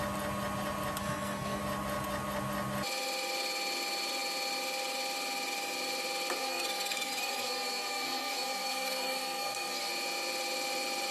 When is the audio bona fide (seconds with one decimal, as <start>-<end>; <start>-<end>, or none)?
0.0-1.0; 1.6-6.4; 9.9-11.1